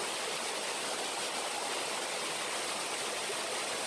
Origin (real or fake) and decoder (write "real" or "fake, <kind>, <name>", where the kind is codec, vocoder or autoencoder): real